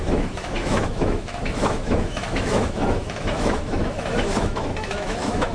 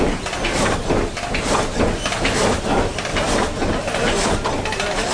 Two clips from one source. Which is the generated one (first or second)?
first